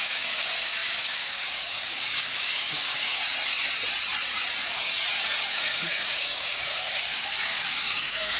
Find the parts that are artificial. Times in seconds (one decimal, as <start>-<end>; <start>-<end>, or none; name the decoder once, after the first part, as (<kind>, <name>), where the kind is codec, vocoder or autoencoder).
0.0-3.2 (codec, DAC); 5.5-8.4